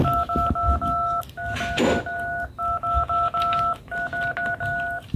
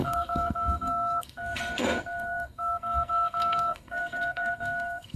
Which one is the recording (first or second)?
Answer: first